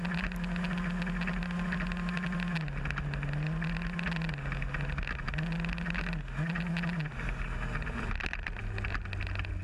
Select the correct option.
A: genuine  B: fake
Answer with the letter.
A